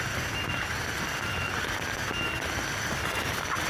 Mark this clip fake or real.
real